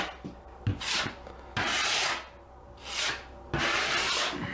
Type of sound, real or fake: real